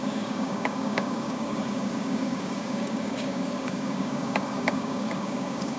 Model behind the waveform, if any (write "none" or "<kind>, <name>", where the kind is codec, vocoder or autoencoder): codec, DAC